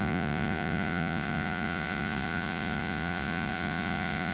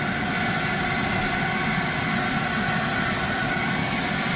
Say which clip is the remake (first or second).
first